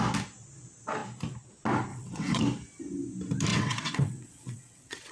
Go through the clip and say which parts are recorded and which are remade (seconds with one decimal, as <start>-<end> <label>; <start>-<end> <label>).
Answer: 0.0-1.9 recorded; 1.9-2.4 remade; 2.4-3.5 recorded; 3.5-5.1 remade